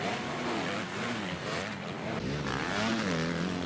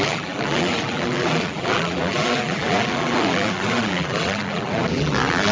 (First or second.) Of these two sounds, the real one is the first